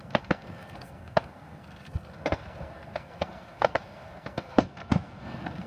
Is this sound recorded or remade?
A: remade